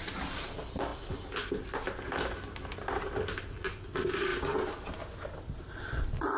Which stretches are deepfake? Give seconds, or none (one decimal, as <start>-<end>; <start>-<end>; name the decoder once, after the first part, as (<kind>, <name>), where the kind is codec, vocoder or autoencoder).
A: none